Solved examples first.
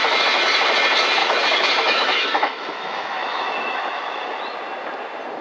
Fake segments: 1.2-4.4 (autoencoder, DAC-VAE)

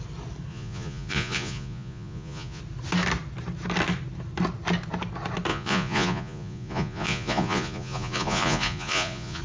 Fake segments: 0.5-2.6 (vocoder, Vocos); 5.5-9.4